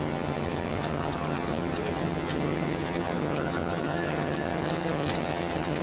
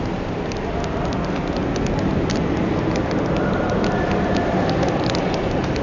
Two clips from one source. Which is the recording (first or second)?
second